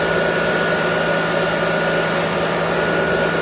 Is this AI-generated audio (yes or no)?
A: no